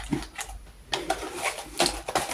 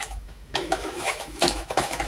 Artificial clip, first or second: second